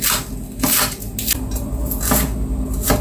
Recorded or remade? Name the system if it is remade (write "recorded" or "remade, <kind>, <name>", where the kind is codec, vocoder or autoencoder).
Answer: recorded